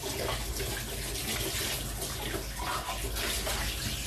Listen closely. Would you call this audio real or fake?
real